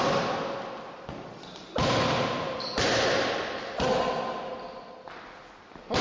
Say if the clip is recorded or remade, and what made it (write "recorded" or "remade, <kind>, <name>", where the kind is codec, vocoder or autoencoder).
recorded